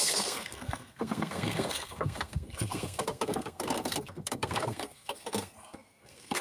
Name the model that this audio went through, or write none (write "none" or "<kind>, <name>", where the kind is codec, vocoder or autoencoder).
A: codec, SNAC